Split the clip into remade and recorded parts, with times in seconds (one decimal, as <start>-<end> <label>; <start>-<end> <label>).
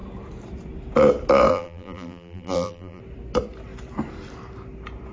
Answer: 0.0-1.5 recorded; 1.5-3.0 remade; 3.0-5.1 recorded